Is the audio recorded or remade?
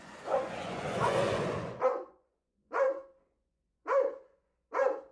remade